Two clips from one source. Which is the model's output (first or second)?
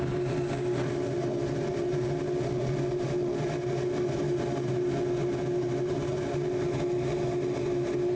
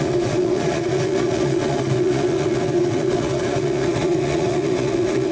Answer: second